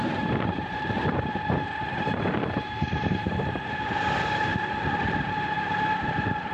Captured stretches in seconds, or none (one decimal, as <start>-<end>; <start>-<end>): 4.5-5.1